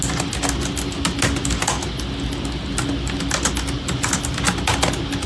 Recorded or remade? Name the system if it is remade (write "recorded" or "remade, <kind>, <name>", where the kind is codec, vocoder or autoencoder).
recorded